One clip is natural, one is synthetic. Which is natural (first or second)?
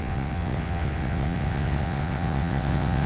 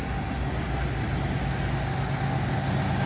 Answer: second